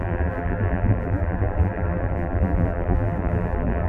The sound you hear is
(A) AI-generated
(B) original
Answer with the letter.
A